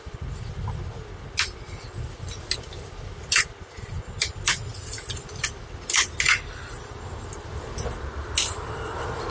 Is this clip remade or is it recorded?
recorded